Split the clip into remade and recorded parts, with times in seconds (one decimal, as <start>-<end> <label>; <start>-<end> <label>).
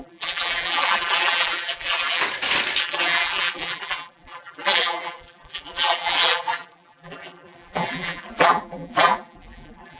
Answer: 0.0-2.2 remade; 2.2-2.8 recorded; 2.8-10.0 remade